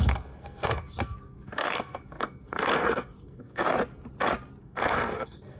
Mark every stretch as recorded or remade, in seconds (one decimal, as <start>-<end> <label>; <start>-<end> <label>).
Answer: 0.0-3.6 remade; 3.6-4.6 recorded; 4.6-5.6 remade

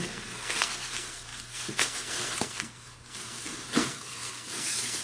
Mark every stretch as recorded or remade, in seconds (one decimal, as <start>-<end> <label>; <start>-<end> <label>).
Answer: 0.0-5.0 remade

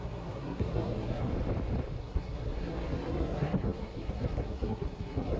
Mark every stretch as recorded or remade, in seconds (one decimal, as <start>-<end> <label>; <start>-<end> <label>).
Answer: 0.0-1.3 remade; 1.3-2.0 recorded; 2.0-5.4 remade

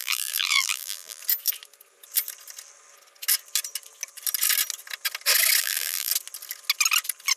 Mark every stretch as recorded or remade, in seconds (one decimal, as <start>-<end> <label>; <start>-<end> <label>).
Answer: 0.0-1.2 remade; 1.2-5.6 recorded; 5.6-6.1 remade; 6.1-7.4 recorded

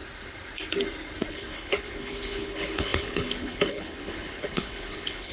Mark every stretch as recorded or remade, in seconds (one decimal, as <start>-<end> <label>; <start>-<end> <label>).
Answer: 0.0-1.3 recorded; 1.3-5.3 remade

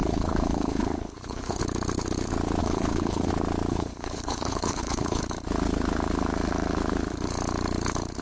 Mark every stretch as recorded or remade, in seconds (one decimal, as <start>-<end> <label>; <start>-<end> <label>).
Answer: 0.0-1.6 remade; 1.6-2.6 recorded; 2.6-3.3 remade; 3.3-3.7 recorded; 3.7-5.2 remade; 5.2-8.2 recorded